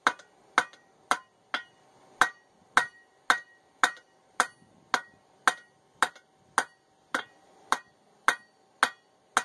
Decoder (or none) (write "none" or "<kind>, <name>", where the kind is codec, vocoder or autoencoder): none